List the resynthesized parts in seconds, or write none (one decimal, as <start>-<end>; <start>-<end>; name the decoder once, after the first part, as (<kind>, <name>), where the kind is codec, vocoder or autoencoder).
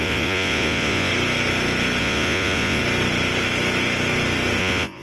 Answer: 0.0-1.1 (vocoder, Vocos); 2.0-2.8; 4.6-5.0